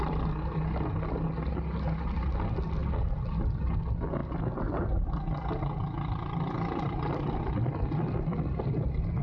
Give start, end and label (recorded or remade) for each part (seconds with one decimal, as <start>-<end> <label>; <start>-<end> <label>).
0.0-9.2 recorded